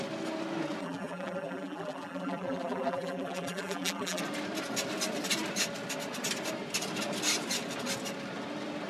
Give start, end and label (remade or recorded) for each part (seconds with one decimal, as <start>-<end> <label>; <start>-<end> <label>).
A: 0.0-0.8 recorded; 0.8-4.2 remade; 4.2-8.9 recorded